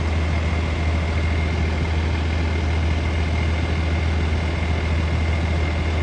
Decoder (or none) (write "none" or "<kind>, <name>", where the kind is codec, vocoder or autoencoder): none